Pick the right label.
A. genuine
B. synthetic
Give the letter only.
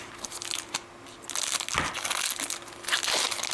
A